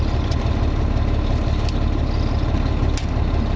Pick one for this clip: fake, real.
real